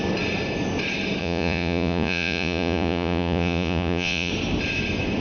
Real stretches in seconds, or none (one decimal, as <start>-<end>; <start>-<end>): 0.0-1.2; 4.3-5.2